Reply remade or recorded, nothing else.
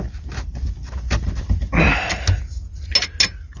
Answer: recorded